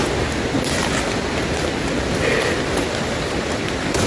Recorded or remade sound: recorded